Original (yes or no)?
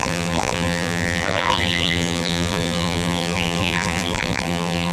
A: no